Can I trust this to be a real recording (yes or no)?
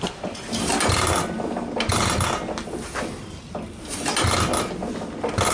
yes